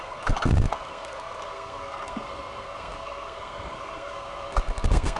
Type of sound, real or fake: fake